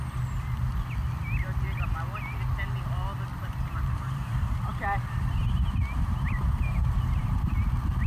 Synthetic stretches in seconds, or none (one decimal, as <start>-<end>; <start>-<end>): 3.3-7.5